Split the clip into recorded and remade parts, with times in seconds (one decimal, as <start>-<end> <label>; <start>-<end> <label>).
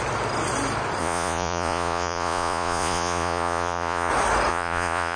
0.0-1.0 recorded; 1.0-4.1 remade; 4.1-4.5 recorded; 4.5-5.2 remade